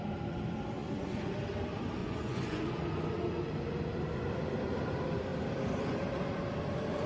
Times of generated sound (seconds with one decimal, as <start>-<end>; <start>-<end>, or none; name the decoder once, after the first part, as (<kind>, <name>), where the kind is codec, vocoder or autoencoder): 0.8-1.3 (vocoder, Vocos); 2.0-3.5